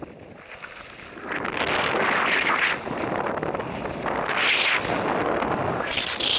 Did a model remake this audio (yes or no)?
no